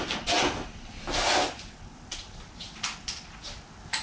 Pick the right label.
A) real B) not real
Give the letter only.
A